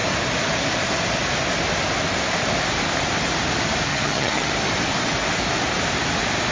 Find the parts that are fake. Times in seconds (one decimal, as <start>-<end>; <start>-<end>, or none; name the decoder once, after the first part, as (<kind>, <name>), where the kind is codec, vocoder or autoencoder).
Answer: 3.9-4.5 (vocoder, HiFi-GAN)